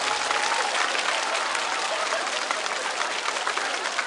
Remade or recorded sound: recorded